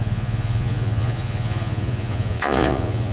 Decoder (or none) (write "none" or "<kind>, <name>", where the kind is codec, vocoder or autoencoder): vocoder, Vocos